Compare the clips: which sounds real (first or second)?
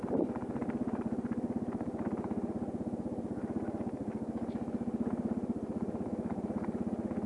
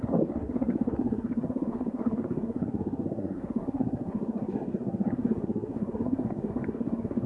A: first